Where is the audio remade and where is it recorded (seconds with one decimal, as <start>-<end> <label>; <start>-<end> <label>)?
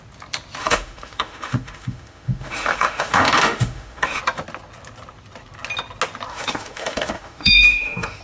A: 0.0-0.6 recorded; 0.6-4.2 remade; 4.2-6.3 recorded; 6.3-8.2 remade